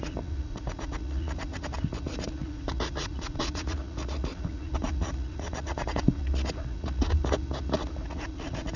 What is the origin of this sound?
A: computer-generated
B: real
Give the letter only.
A